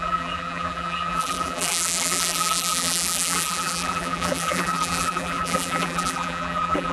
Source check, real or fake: fake